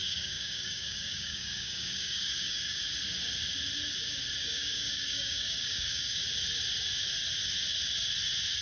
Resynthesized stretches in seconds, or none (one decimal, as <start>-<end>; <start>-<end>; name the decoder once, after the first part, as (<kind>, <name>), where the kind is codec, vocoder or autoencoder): 0.0-2.8 (codec, DAC); 4.4-6.2